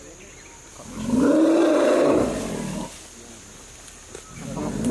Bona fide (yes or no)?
yes